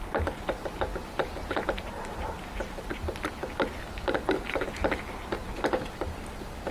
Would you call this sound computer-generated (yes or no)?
no